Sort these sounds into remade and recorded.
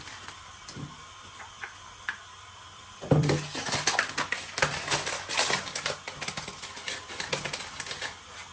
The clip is recorded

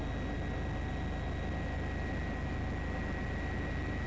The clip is recorded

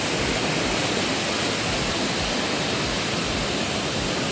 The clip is recorded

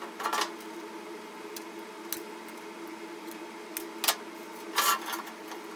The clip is recorded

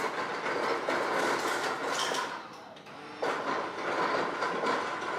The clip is recorded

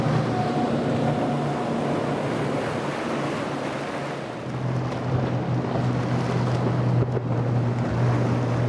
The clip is recorded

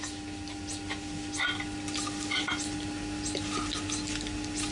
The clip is recorded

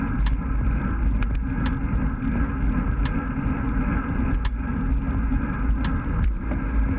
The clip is recorded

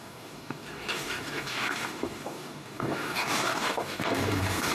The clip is remade